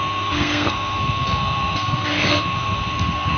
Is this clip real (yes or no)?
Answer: no